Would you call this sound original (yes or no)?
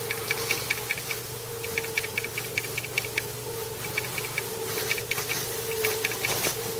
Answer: yes